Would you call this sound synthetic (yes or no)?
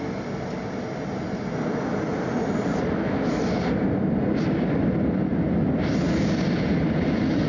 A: no